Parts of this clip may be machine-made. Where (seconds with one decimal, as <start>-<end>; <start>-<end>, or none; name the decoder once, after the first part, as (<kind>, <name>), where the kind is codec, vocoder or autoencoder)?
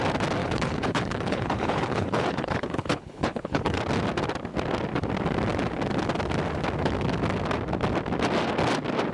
0.4-3.8 (codec, HILCodec)